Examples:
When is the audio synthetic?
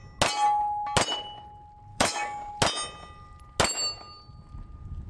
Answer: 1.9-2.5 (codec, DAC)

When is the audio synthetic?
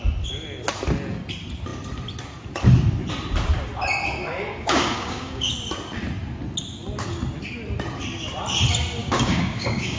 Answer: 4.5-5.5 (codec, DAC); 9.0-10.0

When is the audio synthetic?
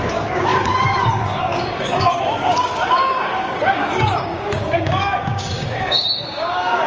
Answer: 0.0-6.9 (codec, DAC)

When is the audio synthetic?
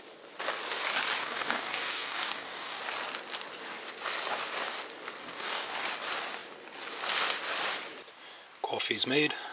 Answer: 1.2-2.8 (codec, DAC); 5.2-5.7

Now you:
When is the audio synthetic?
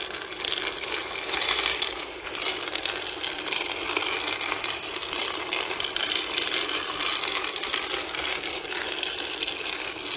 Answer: 1.7-2.4 (codec, DAC)